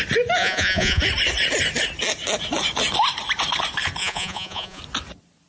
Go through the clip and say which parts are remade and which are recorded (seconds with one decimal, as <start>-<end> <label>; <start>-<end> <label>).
0.0-0.4 recorded; 0.4-1.0 remade; 1.0-4.0 recorded; 4.0-4.8 remade; 4.8-5.5 recorded